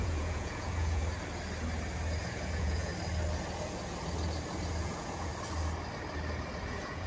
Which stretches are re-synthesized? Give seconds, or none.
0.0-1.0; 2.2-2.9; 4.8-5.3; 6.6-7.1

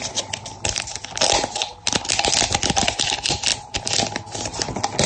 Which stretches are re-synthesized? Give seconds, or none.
none

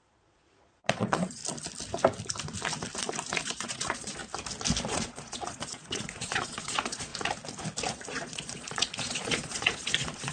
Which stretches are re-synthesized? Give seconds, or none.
0.0-1.4; 3.4-4.2; 4.9-7.1; 7.9-10.3

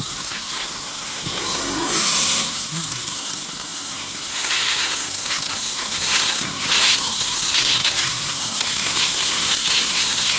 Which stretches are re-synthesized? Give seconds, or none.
0.0-10.4